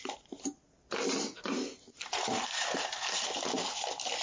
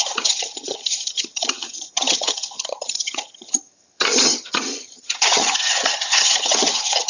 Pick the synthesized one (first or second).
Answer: second